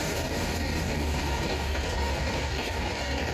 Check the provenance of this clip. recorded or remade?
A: remade